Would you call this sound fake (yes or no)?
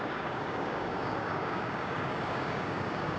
yes